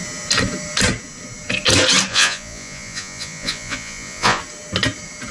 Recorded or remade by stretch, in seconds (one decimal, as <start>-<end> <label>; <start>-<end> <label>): 0.0-2.1 recorded; 2.1-4.4 remade; 4.4-5.3 recorded